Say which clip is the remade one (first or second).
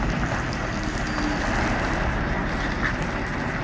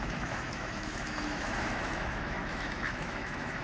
second